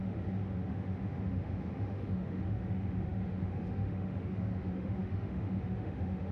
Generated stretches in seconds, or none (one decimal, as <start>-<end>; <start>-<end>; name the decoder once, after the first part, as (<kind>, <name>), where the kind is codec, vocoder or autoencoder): 0.0-6.3 (autoencoder, DAC-VAE)